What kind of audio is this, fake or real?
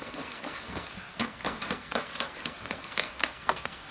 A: fake